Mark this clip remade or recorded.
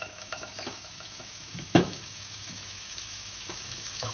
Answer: remade